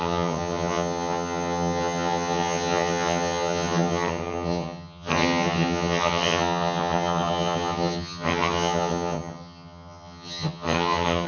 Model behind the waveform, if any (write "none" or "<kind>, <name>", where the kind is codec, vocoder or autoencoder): vocoder, HiFi-GAN